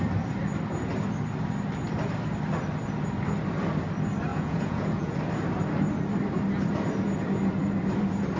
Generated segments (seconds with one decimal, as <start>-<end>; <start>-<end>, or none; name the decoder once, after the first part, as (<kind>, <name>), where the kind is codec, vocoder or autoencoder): 4.3-5.2 (vocoder, Vocos)